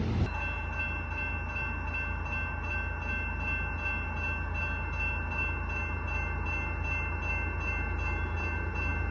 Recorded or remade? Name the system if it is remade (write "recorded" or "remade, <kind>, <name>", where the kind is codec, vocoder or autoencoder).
recorded